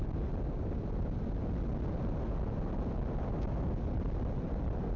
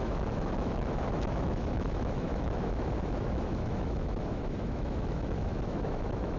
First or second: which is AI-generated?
second